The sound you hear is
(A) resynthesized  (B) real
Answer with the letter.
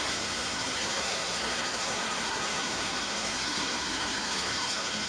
A